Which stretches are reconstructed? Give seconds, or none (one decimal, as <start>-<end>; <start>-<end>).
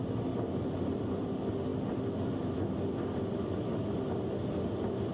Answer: none